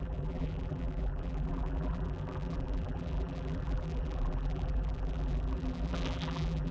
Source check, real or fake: fake